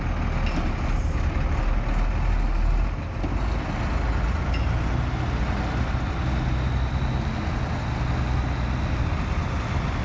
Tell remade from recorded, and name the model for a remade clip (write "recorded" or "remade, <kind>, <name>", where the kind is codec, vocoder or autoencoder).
recorded